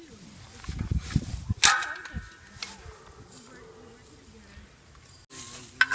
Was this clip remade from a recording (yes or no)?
no